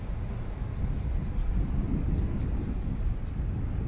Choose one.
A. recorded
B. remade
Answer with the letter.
A